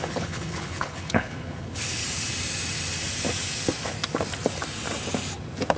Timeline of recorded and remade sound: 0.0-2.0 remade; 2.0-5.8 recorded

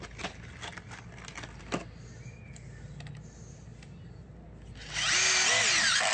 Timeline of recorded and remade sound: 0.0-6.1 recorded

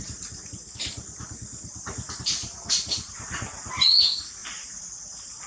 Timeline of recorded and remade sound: 0.0-2.4 recorded; 2.4-3.2 remade; 3.2-4.4 recorded; 4.4-5.5 remade